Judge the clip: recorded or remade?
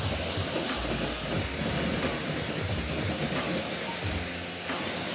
recorded